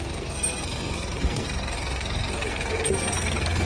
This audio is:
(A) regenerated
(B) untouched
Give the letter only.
A